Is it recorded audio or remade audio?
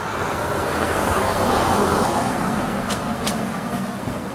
remade